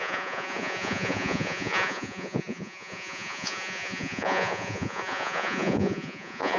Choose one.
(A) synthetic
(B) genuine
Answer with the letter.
A